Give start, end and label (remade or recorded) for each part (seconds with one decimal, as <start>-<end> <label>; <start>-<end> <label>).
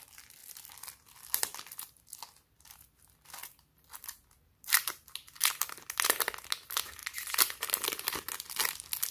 0.0-9.1 recorded